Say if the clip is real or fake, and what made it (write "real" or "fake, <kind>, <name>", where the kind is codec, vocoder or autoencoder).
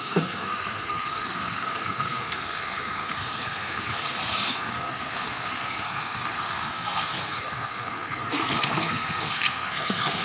fake, codec, SNAC